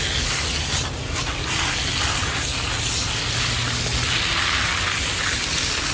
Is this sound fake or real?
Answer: real